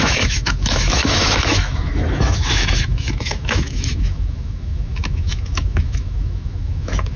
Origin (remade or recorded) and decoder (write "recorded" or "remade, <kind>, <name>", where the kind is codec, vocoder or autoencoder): remade, autoencoder, DAC-VAE